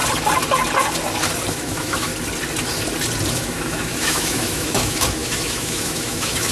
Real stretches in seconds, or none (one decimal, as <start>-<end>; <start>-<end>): 0.0-1.5; 2.1-3.3